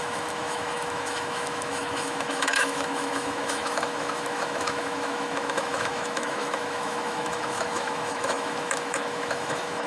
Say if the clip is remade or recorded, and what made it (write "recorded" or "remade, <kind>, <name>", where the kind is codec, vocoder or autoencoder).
remade, autoencoder, DAC-VAE